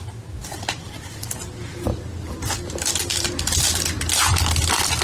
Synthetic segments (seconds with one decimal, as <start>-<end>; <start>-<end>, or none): none